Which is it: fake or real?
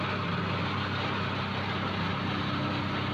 real